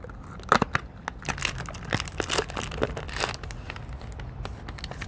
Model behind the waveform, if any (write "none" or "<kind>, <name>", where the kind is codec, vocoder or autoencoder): none